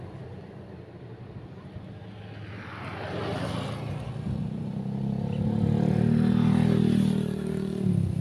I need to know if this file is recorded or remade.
recorded